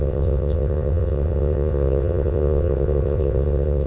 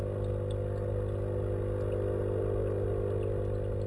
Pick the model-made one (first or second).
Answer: first